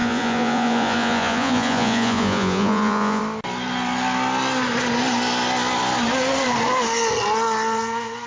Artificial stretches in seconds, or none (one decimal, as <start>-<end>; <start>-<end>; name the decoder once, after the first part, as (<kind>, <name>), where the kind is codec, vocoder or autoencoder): 0.0-3.2 (vocoder, Vocos)